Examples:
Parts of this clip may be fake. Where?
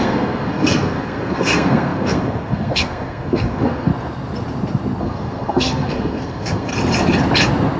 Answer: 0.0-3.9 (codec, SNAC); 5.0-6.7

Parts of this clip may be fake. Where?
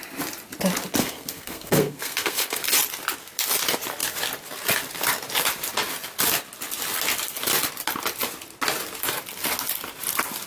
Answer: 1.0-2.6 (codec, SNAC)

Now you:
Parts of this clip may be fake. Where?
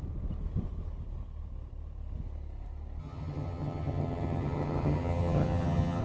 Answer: 3.0-6.0 (vocoder, HiFi-GAN)